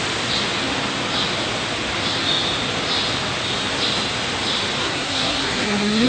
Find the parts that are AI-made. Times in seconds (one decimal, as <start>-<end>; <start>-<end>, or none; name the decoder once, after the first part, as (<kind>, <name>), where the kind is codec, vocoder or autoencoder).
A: 4.8-6.1 (codec, SNAC)